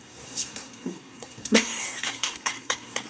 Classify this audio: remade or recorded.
remade